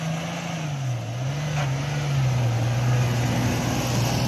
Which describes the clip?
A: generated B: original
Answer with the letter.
B